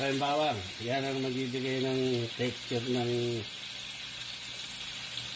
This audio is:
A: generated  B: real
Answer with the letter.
B